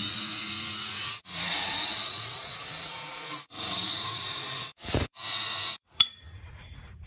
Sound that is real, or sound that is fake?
fake